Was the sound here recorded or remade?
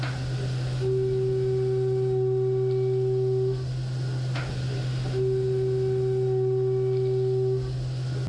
recorded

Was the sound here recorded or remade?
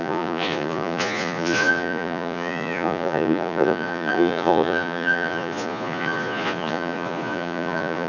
remade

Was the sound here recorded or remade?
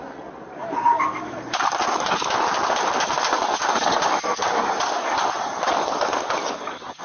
recorded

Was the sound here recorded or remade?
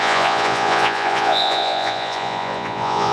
remade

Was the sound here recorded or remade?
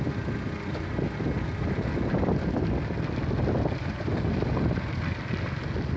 recorded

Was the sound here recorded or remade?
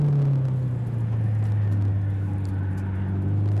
recorded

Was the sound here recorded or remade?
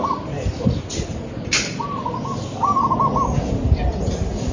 recorded